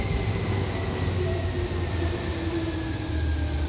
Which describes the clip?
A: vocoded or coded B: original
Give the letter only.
B